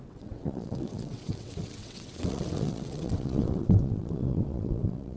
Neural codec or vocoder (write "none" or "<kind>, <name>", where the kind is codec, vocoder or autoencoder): vocoder, WaveNeXt